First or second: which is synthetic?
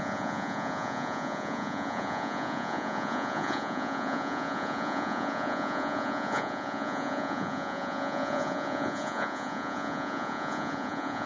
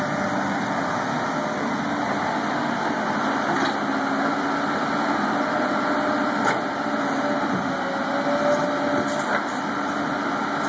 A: first